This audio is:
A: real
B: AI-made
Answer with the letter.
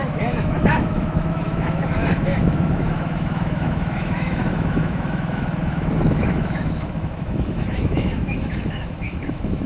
B